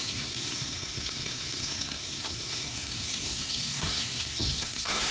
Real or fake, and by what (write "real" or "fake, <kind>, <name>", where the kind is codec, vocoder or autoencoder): fake, codec, SNAC